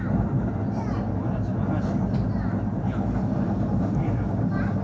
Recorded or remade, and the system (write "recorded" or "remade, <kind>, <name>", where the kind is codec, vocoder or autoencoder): recorded